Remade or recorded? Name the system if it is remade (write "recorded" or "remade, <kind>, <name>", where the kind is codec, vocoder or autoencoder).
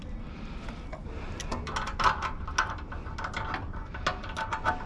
recorded